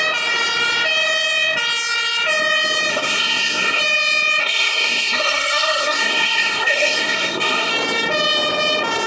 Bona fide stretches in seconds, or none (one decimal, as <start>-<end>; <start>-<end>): 0.0-2.9; 3.8-4.4; 7.7-9.1